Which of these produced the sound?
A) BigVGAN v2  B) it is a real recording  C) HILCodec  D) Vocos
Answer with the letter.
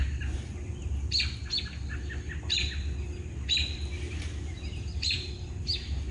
B